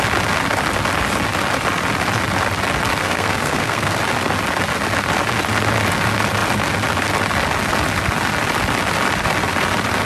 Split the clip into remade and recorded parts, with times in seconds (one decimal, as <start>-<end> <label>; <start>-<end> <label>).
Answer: 0.0-3.0 recorded; 3.0-4.0 remade; 4.0-10.1 recorded